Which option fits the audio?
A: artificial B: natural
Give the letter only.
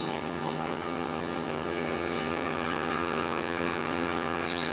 A